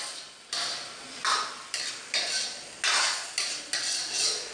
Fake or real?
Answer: real